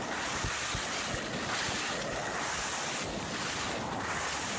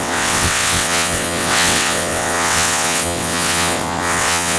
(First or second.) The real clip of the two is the first